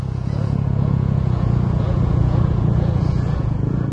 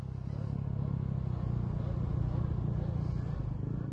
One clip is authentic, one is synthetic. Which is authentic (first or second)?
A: second